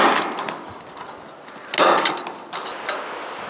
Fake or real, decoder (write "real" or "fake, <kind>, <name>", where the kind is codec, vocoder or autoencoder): real